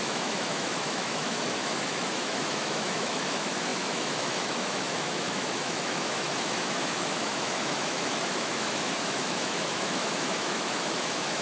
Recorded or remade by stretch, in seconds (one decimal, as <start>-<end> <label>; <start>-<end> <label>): 0.0-11.4 remade